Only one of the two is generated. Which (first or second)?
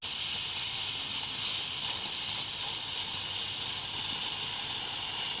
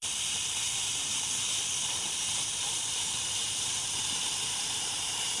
second